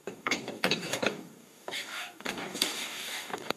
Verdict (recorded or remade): remade